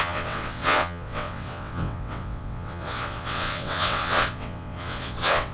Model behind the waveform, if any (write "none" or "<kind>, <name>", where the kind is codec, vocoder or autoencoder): vocoder, WaveNeXt